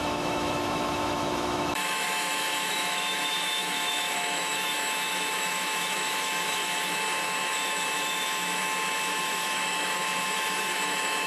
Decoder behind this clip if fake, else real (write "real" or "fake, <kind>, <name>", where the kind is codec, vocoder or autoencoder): fake, autoencoder, DAC-VAE